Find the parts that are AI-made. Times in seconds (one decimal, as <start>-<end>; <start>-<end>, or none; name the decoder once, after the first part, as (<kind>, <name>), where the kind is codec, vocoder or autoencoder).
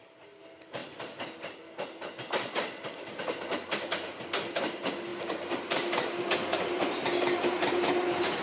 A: none